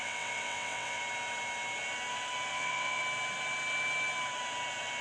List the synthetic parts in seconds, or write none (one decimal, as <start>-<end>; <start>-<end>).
0.0-1.0; 2.5-3.0

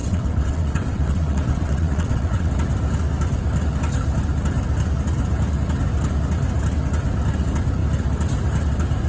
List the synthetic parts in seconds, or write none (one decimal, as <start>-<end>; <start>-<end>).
0.0-2.5

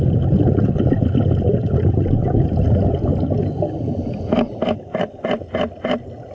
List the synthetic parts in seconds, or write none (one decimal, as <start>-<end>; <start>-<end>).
none

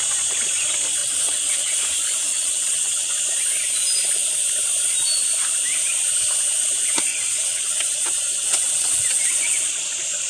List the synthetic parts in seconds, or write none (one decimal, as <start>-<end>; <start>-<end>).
1.0-1.8; 2.3-3.1; 7.1-9.6

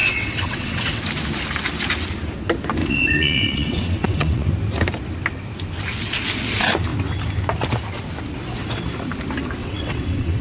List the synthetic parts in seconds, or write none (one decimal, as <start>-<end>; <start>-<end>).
0.0-1.0; 2.8-4.5; 9.6-10.4

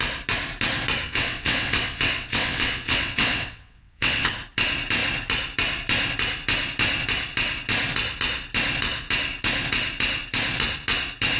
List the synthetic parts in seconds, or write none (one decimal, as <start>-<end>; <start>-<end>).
1.0-4.3